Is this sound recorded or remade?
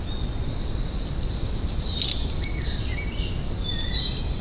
recorded